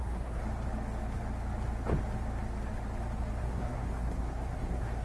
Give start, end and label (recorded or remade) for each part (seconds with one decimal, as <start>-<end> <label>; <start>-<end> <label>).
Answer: 0.0-0.4 remade; 0.4-3.4 recorded; 3.4-5.0 remade